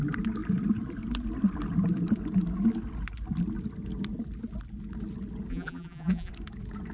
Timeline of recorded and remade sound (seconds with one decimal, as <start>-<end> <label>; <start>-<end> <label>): 0.0-5.5 recorded; 5.5-6.3 remade; 6.3-6.9 recorded